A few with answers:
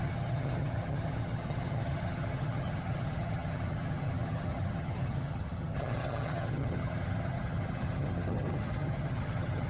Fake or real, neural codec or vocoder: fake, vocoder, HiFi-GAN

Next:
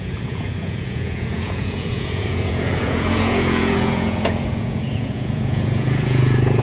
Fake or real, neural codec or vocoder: fake, vocoder, Vocos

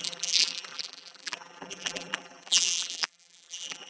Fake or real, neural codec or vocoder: fake, vocoder, BigVGAN v2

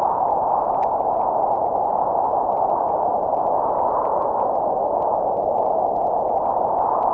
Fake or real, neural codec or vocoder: real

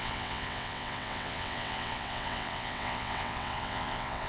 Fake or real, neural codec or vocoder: fake, vocoder, WaveNeXt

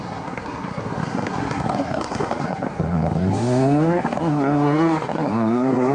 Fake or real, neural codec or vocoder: fake, codec, SNAC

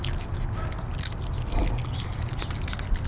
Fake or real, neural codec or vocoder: real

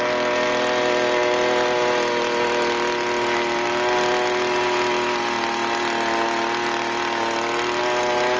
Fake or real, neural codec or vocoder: real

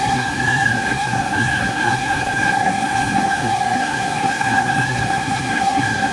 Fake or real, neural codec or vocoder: fake, codec, SNAC